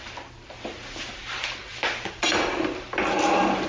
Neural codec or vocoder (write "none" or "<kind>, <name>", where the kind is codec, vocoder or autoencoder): none